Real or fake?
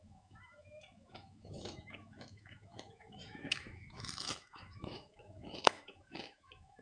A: fake